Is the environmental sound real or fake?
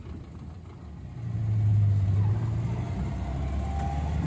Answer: real